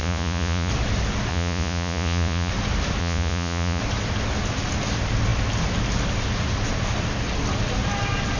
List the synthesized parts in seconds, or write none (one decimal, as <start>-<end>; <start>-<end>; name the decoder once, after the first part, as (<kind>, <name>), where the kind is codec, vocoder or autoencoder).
0.0-0.7 (vocoder, Vocos); 1.3-2.5; 3.0-3.8